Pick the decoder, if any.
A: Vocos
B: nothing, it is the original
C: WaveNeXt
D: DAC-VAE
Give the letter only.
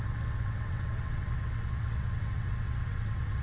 C